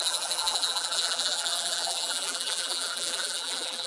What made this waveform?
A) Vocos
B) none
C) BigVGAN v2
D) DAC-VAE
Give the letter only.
C